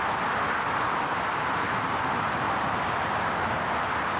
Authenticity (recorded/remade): recorded